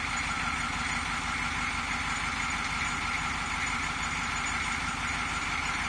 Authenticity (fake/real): real